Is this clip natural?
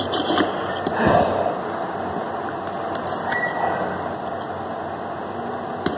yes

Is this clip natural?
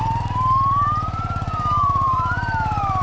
no